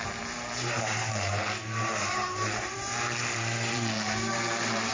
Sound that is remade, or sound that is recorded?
remade